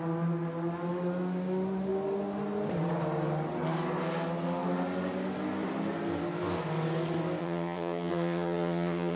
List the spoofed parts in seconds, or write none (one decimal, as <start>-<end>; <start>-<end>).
7.4-9.2